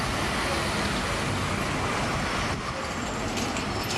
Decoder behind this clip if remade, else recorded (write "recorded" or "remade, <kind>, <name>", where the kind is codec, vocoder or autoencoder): recorded